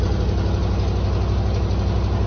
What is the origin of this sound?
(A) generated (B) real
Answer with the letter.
B